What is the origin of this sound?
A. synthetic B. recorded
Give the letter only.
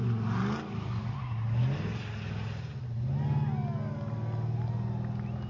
B